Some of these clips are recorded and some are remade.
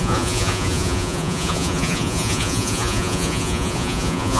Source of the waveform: remade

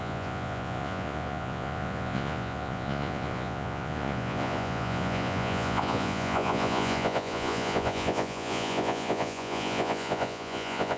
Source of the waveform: remade